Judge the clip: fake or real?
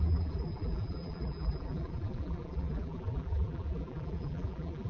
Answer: fake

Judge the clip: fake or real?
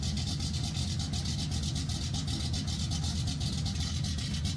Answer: real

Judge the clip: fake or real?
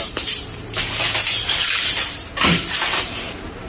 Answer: fake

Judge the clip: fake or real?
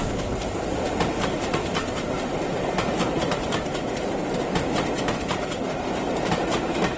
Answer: fake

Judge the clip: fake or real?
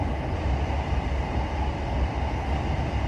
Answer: real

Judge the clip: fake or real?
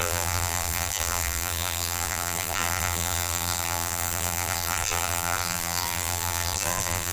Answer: fake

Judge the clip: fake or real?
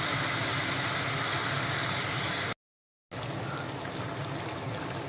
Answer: real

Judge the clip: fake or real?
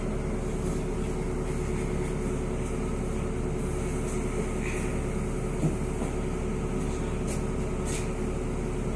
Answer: real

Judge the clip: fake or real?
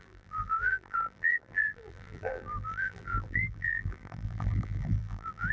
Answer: fake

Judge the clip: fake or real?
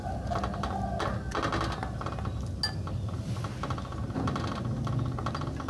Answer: real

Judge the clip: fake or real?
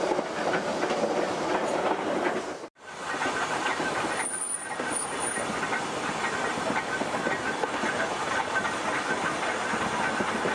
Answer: real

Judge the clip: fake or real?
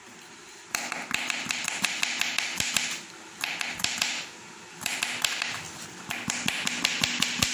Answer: fake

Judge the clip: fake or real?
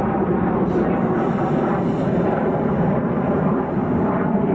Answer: fake